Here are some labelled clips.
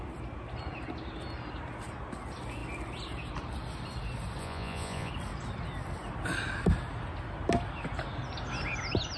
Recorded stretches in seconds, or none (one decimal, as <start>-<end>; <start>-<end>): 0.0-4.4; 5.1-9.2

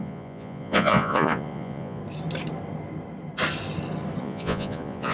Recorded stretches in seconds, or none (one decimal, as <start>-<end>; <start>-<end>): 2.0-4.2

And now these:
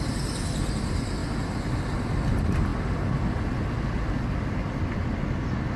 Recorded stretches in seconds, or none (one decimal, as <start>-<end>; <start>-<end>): 0.0-5.8

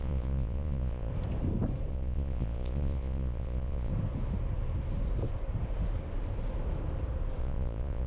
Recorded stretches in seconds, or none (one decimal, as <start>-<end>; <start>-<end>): 1.1-1.9; 3.9-7.4

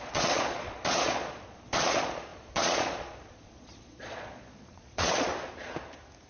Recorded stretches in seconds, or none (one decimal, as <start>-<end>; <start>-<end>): 5.3-6.3

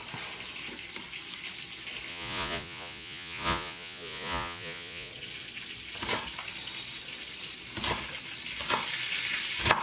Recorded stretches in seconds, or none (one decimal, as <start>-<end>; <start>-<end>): 0.0-2.1; 5.1-9.8

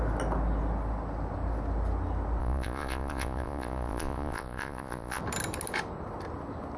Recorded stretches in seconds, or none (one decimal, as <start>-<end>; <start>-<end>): 0.0-2.4; 5.2-6.8